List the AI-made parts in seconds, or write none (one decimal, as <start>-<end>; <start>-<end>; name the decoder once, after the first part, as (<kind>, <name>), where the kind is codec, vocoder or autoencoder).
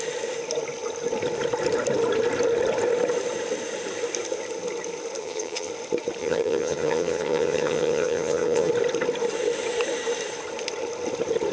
5.2-5.7 (vocoder, HiFi-GAN); 6.2-8.7